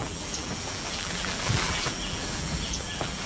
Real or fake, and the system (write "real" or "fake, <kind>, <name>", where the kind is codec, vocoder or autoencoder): fake, vocoder, BigVGAN v2